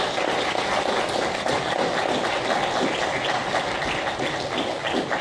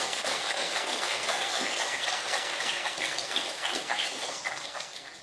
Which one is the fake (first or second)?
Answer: second